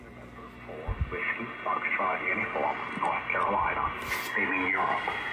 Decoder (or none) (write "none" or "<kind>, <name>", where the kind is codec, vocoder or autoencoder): none